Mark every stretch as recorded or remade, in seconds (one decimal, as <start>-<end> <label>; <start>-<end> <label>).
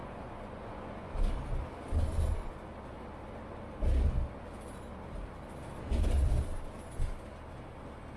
0.0-1.1 remade; 1.1-8.2 recorded